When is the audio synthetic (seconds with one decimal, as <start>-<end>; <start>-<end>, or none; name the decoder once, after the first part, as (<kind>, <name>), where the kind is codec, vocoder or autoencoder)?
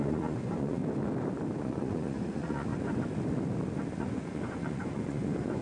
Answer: 0.0-0.8 (vocoder, Vocos); 1.6-2.7; 4.0-5.6